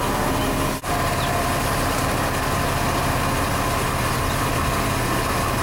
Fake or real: real